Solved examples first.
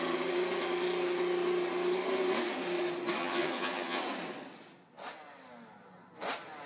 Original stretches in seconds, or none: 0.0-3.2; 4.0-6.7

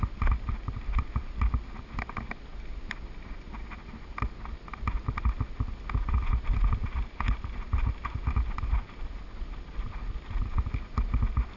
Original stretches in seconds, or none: 0.0-11.6

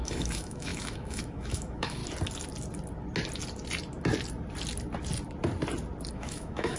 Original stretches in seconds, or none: 2.0-6.1